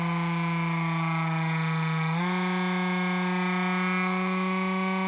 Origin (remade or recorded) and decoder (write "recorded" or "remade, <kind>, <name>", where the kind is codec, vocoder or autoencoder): recorded